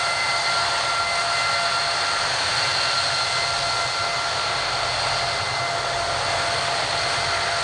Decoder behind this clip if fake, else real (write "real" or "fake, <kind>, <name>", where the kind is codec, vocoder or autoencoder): real